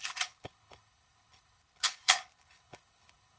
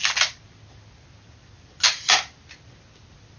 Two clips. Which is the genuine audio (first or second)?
second